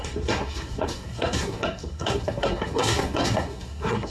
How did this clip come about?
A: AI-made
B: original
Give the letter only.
A